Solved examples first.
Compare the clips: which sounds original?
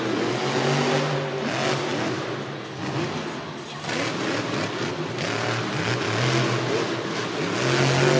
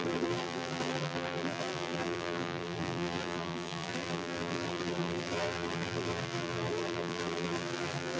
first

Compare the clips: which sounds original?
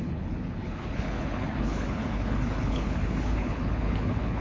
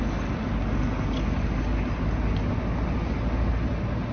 second